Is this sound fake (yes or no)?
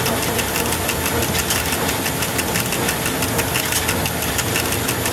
no